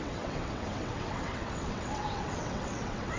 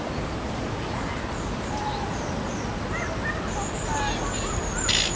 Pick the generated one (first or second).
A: first